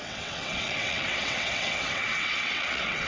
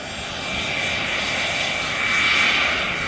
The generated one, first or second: first